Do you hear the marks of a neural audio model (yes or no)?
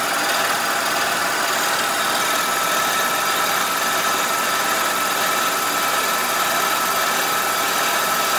no